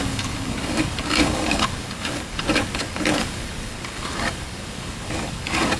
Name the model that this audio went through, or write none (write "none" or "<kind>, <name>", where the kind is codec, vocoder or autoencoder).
codec, DAC